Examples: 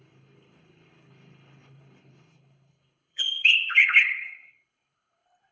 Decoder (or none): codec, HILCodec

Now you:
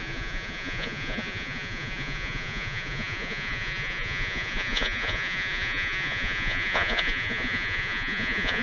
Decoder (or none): vocoder, Vocos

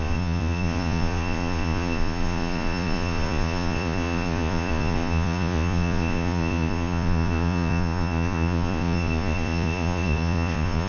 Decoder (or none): vocoder, Vocos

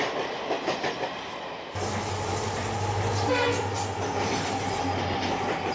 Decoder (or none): none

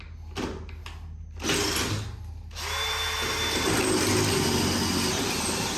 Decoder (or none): none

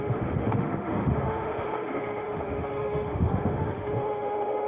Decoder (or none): autoencoder, DAC-VAE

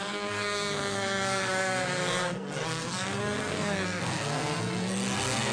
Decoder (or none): codec, SNAC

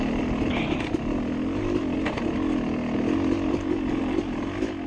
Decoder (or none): none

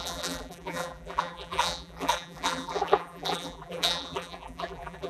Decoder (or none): vocoder, BigVGAN v2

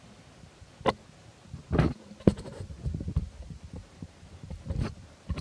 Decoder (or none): none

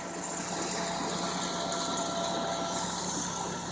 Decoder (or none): none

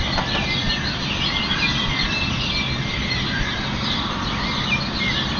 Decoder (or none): none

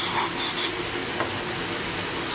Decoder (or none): none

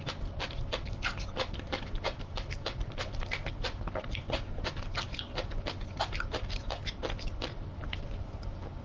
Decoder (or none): none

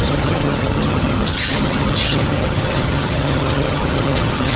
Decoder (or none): vocoder, HiFi-GAN